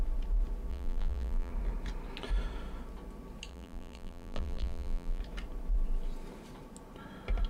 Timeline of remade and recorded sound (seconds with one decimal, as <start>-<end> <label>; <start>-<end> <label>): 0.0-0.7 recorded; 0.7-1.5 remade; 1.5-3.5 recorded; 3.5-5.2 remade; 5.2-7.5 recorded